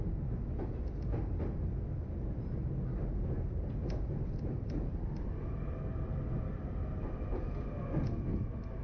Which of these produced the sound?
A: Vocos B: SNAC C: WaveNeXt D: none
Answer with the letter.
D